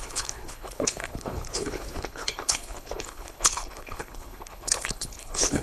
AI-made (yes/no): yes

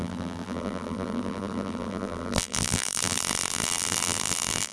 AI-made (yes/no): yes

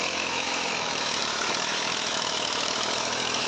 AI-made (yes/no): yes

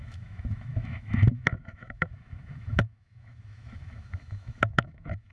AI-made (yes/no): yes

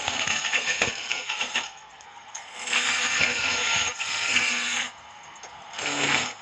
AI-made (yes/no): yes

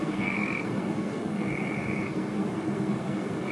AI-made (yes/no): yes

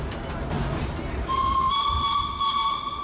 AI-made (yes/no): no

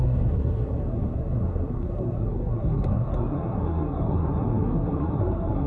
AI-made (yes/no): yes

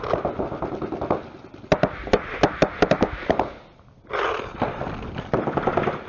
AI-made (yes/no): no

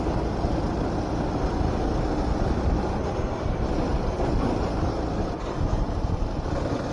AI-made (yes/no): no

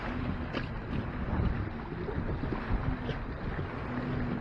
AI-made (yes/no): no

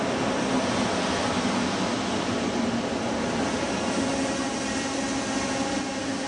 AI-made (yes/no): no